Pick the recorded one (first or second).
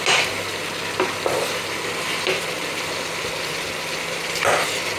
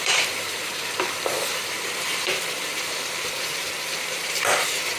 first